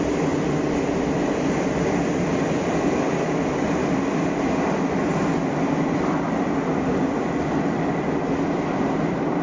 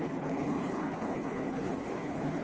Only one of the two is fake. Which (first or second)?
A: second